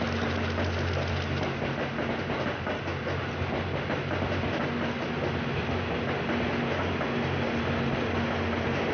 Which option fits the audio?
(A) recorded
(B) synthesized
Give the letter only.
A